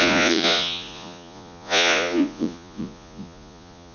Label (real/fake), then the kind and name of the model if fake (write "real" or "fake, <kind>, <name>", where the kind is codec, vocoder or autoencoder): fake, vocoder, Vocos